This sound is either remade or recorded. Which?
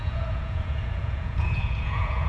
remade